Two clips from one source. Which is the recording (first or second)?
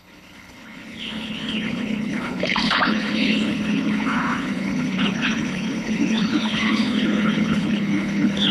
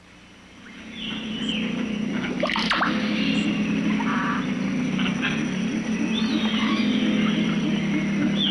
second